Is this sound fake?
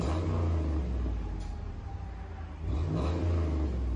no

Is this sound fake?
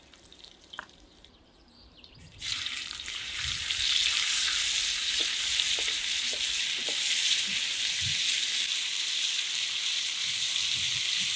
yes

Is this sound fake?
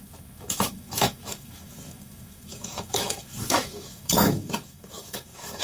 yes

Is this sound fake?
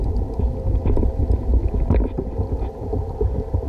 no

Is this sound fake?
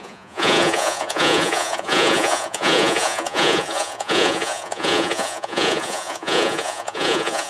yes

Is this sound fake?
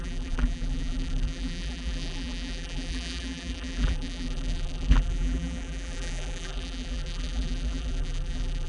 yes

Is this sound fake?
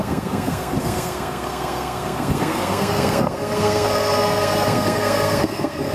yes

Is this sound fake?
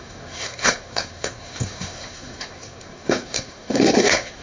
yes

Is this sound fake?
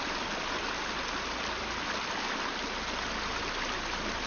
no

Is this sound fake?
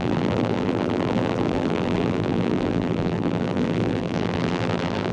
yes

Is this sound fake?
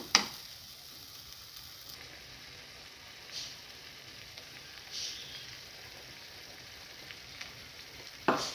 yes